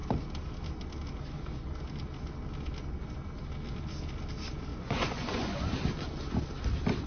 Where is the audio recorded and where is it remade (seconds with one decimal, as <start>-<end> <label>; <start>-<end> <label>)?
0.0-4.7 recorded; 4.7-5.6 remade; 5.6-7.1 recorded